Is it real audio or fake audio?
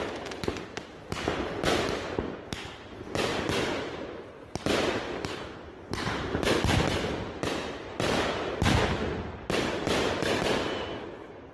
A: real